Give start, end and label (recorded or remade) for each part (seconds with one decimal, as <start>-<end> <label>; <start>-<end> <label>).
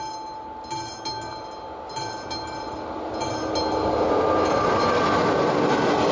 0.0-6.1 recorded